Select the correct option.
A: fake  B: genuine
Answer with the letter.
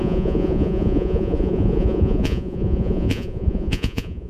A